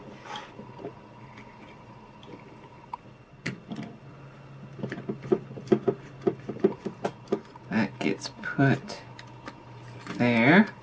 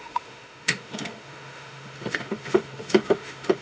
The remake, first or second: second